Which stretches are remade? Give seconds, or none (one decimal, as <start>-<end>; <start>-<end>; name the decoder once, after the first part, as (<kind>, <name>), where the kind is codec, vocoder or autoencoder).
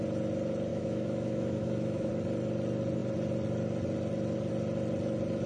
0.7-2.1 (autoencoder, DAC-VAE)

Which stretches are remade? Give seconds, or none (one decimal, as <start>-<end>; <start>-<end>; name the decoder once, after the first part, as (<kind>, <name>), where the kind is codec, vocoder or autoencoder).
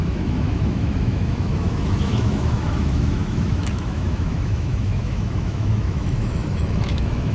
0.0-7.3 (autoencoder, DAC-VAE)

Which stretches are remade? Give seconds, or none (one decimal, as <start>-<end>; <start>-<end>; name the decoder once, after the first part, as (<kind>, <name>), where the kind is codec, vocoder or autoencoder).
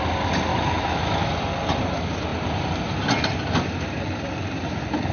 0.5-1.3 (autoencoder, DAC-VAE)